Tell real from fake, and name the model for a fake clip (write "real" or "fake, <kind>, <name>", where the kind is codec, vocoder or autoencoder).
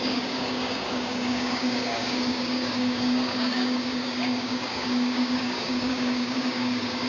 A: fake, codec, DAC